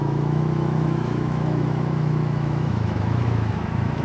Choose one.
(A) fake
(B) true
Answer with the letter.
A